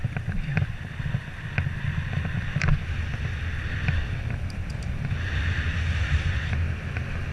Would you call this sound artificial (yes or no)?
no